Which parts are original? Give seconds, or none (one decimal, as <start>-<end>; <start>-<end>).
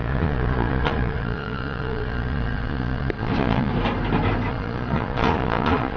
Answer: 3.7-4.5